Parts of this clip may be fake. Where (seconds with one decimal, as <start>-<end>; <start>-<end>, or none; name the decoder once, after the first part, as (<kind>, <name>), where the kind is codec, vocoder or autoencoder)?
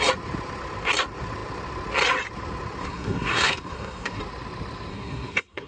2.8-4.2 (codec, SNAC); 4.9-5.7